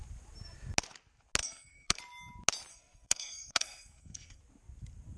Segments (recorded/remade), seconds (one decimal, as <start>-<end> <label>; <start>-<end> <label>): 0.0-1.4 recorded; 1.4-2.0 remade; 2.0-2.7 recorded; 2.7-4.4 remade; 4.4-5.2 recorded